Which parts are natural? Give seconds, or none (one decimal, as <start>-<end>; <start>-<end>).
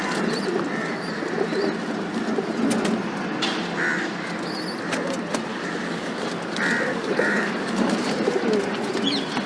0.0-5.5; 6.3-6.9; 7.9-9.5